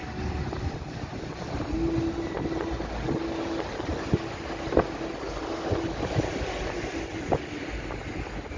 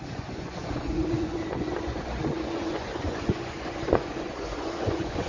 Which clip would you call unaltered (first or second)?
first